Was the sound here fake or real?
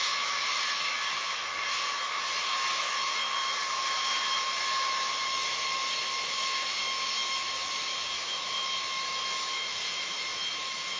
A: fake